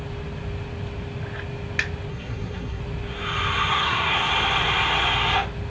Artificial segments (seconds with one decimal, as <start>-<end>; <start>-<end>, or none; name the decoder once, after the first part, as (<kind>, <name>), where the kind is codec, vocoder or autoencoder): 2.1-2.8 (codec, SNAC); 3.7-4.3